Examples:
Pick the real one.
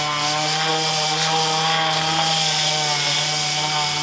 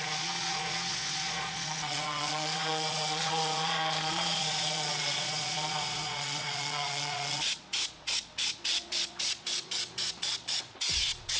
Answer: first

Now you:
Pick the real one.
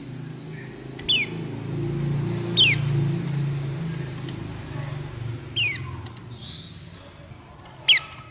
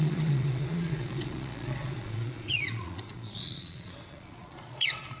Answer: first